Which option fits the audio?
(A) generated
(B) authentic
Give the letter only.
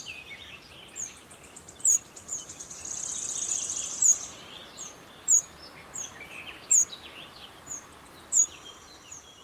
A